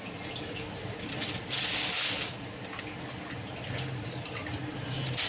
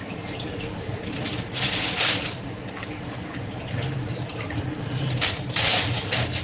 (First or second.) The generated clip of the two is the second